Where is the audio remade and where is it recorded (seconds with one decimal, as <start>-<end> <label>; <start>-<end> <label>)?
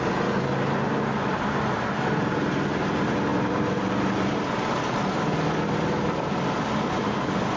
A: 0.0-7.6 recorded